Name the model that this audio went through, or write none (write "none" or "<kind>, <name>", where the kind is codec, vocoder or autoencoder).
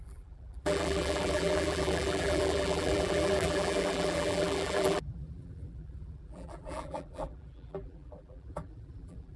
vocoder, BigVGAN v2